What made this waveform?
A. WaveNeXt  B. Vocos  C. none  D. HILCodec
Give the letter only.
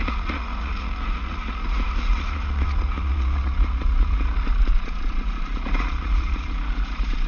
B